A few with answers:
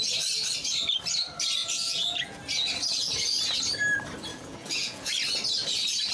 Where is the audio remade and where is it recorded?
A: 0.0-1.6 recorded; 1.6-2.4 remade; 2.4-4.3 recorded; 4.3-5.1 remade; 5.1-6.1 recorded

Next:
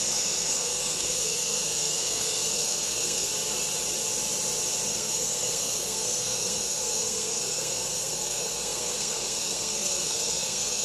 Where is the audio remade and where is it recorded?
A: 0.0-3.3 remade; 3.3-4.9 recorded; 4.9-10.8 remade

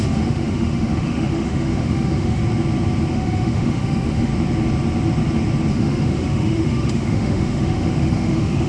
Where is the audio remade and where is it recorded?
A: 0.0-2.4 remade; 2.4-3.1 recorded; 3.1-4.3 remade; 4.3-5.7 recorded; 5.7-8.7 remade

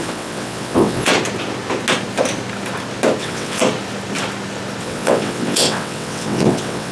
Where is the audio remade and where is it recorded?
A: 0.0-1.1 remade; 1.1-3.2 recorded; 3.2-3.6 remade; 3.6-4.8 recorded; 4.8-6.9 remade

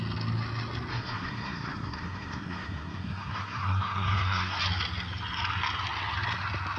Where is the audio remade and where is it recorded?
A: 0.0-0.9 recorded; 0.9-4.6 remade; 4.6-6.8 recorded